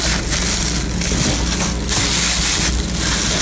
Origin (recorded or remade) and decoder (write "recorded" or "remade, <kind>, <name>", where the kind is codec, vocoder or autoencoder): recorded